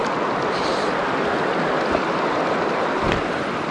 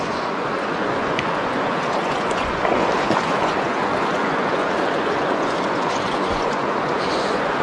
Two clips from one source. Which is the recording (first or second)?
first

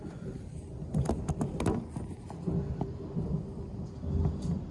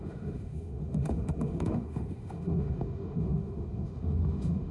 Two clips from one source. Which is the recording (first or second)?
first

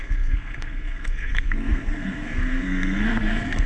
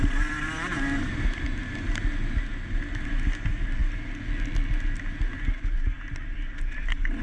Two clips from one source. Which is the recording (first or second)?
second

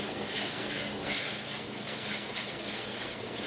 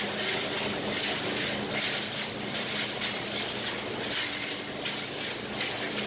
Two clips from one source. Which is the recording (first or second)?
second